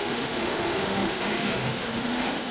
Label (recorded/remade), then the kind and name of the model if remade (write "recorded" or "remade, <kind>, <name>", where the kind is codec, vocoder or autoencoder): remade, autoencoder, DAC-VAE